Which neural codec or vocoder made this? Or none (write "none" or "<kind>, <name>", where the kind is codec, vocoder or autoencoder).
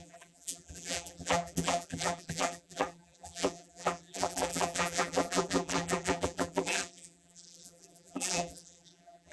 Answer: vocoder, BigVGAN v2